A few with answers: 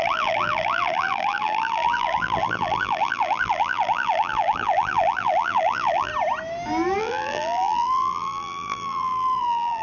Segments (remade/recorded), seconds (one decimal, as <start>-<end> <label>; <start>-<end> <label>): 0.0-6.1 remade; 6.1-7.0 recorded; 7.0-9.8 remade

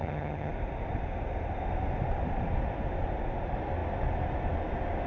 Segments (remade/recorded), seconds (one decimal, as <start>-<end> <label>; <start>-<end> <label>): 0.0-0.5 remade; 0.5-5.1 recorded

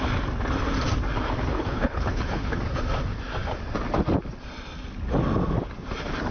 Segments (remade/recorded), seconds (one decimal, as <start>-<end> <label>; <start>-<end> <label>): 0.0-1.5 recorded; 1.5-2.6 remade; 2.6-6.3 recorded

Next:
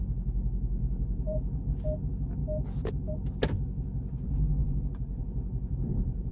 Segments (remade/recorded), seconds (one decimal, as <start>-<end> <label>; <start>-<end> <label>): 0.0-0.8 recorded; 0.8-1.6 remade; 1.6-4.6 recorded; 4.6-6.3 remade